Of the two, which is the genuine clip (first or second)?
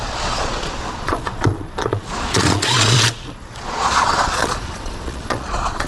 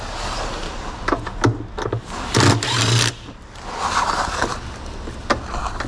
second